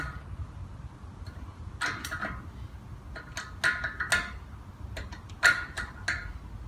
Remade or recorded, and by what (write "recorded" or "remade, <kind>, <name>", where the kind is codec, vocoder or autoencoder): recorded